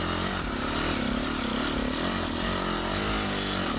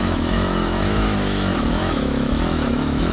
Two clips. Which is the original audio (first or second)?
first